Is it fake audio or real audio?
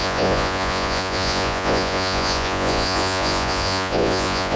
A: fake